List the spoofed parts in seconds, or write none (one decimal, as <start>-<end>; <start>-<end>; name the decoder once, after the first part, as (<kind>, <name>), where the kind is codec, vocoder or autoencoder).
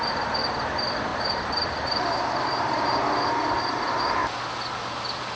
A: 1.1-3.1 (vocoder, BigVGAN v2)